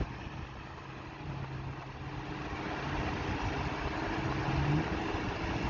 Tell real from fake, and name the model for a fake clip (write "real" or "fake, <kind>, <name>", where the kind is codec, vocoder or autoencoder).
real